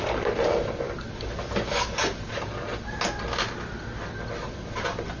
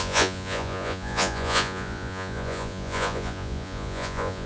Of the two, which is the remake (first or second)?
second